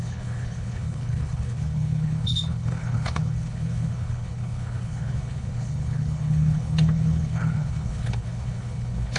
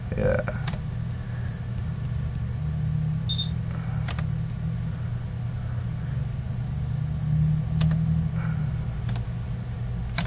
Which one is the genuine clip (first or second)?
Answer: second